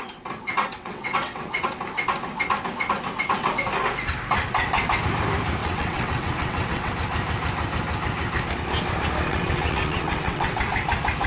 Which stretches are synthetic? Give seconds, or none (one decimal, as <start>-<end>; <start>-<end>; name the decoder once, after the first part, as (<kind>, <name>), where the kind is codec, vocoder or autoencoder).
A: 0.7-1.8 (vocoder, WaveNeXt); 5.6-6.9; 9.3-10.7